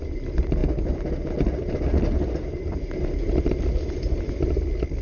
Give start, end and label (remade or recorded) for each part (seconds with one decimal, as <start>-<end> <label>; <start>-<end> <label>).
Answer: 0.0-5.0 recorded